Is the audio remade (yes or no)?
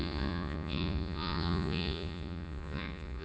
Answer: yes